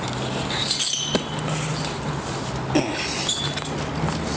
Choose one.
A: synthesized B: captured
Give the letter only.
B